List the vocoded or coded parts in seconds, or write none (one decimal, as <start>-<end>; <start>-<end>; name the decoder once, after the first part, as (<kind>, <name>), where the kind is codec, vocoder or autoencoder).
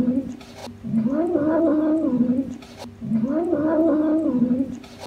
none